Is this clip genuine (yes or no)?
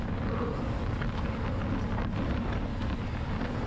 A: yes